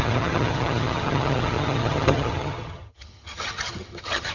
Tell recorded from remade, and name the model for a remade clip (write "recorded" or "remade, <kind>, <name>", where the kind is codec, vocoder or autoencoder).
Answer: remade, vocoder, HiFi-GAN